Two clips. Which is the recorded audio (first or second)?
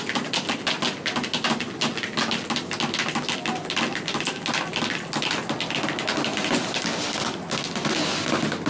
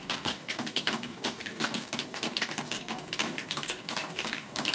first